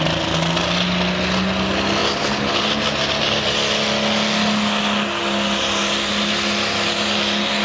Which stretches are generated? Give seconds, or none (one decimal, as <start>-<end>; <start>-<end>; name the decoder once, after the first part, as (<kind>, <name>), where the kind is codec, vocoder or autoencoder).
none